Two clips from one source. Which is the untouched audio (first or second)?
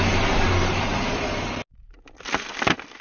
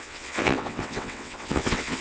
first